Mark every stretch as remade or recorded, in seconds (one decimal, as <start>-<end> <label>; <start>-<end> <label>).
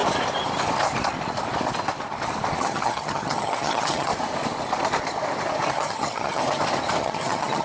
0.0-2.6 recorded; 2.6-4.1 remade; 4.1-5.7 recorded; 5.7-6.4 remade; 6.4-7.0 recorded; 7.0-7.6 remade